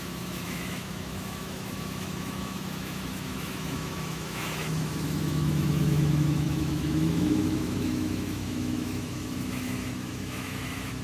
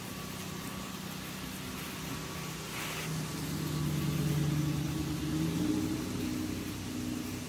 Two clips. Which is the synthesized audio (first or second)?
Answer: first